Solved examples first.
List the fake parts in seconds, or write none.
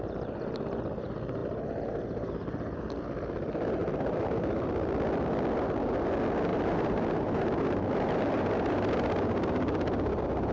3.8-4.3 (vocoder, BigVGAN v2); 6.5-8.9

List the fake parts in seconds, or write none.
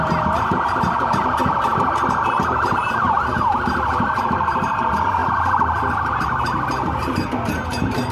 0.0-5.2 (vocoder, BigVGAN v2); 5.9-8.1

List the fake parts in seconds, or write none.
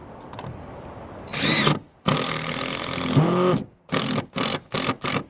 0.0-0.9 (vocoder, BigVGAN v2); 1.3-3.0